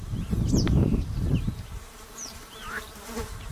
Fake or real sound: fake